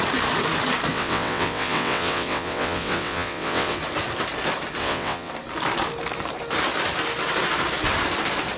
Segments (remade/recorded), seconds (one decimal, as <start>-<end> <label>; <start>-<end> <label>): 0.0-0.9 recorded; 0.9-3.8 remade; 3.8-4.8 recorded; 4.8-5.3 remade; 5.3-8.6 recorded